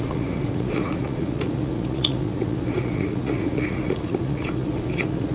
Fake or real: fake